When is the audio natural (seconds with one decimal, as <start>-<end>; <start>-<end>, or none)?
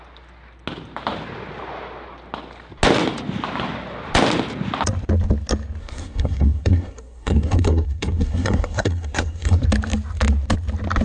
0.0-5.8; 9.6-11.0